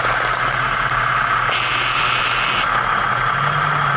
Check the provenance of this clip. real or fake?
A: real